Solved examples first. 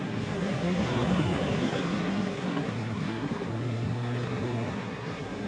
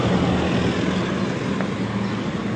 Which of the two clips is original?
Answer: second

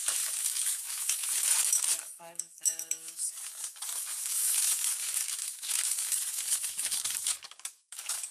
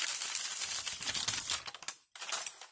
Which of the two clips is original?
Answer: second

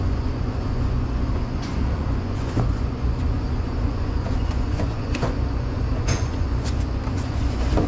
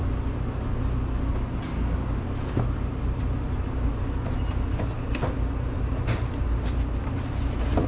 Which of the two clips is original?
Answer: second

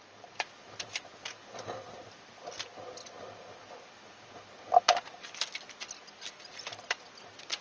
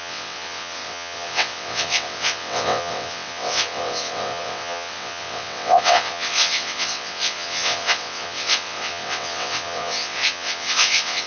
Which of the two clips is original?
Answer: first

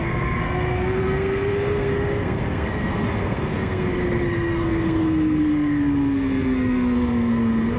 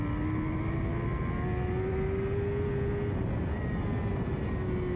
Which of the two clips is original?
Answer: second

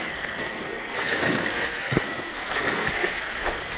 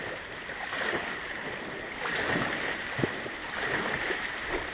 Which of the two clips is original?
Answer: second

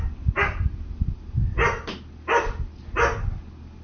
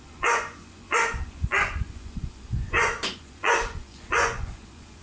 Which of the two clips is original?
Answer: first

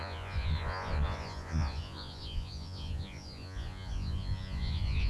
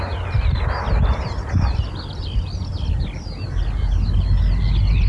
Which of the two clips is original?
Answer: second